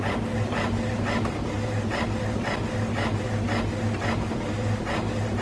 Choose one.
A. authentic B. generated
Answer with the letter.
A